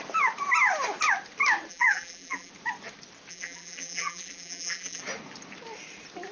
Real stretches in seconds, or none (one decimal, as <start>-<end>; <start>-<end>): 0.0-1.7; 2.5-3.3; 5.0-6.3